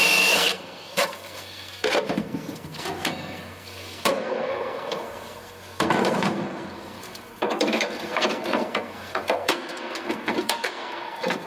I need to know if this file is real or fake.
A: fake